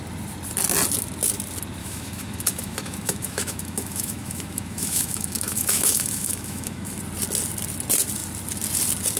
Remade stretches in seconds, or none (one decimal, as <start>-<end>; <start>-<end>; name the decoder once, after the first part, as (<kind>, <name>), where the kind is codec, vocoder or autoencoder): 1.8-7.0 (autoencoder, DAC-VAE)